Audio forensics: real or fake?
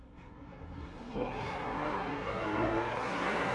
fake